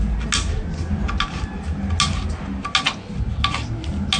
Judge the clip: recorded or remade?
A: recorded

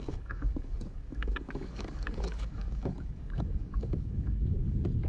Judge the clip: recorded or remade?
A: remade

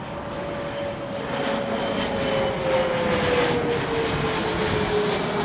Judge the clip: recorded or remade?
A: recorded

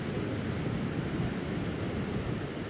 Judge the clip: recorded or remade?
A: recorded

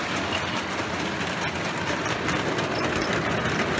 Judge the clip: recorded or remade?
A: recorded